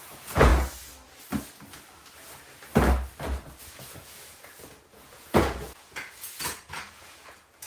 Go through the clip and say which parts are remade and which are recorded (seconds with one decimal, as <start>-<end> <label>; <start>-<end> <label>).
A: 0.0-0.5 remade; 0.5-3.6 recorded; 3.6-7.7 remade

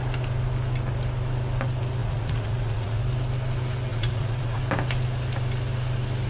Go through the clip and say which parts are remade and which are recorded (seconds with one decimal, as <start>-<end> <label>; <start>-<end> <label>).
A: 0.0-2.0 recorded; 2.0-3.0 remade; 3.0-3.9 recorded; 3.9-4.6 remade; 4.6-6.3 recorded